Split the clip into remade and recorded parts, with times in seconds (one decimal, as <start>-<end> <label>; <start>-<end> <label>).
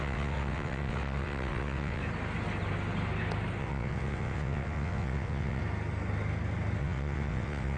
0.0-2.0 remade; 2.0-3.6 recorded; 3.6-5.6 remade; 5.6-6.8 recorded; 6.8-7.8 remade